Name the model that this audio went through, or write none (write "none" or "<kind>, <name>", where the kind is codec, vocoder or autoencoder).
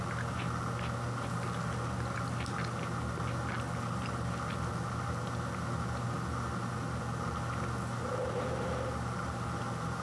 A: none